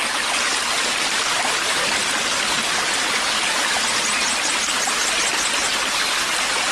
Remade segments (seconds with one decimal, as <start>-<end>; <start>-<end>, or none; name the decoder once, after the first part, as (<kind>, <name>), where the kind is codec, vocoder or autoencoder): none